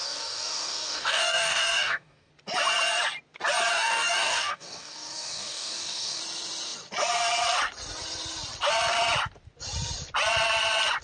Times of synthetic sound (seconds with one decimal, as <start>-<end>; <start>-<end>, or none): 0.0-2.3; 3.7-6.2